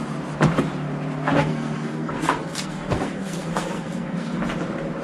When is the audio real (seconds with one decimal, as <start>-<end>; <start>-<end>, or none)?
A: 0.0-1.4; 4.4-5.0

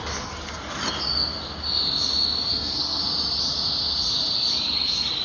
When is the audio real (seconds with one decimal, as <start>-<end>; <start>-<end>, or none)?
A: 0.0-2.5; 3.0-5.2

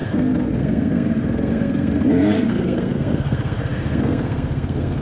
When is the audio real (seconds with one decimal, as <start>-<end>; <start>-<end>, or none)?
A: none

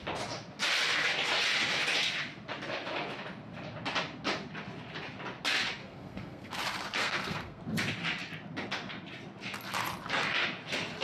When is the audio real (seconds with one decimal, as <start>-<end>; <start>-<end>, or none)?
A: 0.0-5.8; 6.6-7.0; 7.6-11.0